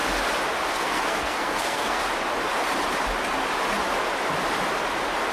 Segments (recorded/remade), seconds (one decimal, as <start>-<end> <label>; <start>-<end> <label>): 0.0-0.7 recorded; 0.7-2.0 remade; 2.0-5.3 recorded